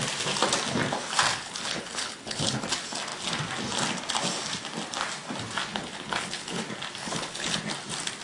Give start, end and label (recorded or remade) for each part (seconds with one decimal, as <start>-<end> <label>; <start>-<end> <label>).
0.0-1.3 recorded; 1.3-2.6 remade; 2.6-5.7 recorded; 5.7-6.6 remade; 6.6-7.0 recorded; 7.0-7.6 remade; 7.6-8.2 recorded